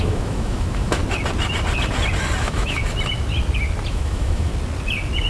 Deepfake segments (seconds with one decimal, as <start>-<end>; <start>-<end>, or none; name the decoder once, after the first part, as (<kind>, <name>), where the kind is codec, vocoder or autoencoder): 0.0-1.0 (autoencoder, DAC-VAE); 2.4-2.8; 3.9-4.5